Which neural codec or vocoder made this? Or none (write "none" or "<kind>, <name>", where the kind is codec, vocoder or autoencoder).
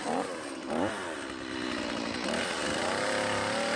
none